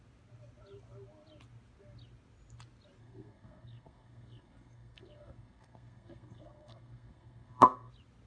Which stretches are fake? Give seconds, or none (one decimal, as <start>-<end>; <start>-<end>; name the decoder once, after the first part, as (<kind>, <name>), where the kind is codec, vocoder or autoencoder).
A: 3.0-7.9 (codec, SNAC)